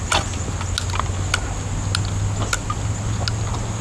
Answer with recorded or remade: recorded